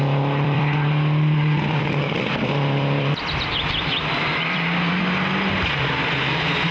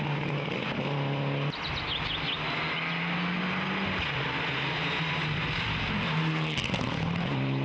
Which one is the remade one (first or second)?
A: first